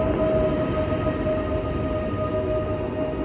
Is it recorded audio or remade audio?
recorded